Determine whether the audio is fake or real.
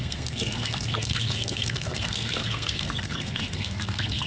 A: fake